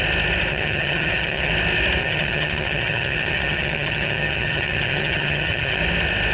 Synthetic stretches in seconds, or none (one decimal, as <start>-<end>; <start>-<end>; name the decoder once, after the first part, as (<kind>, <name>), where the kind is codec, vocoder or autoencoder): 0.5-1.5 (vocoder, HiFi-GAN); 2.0-5.8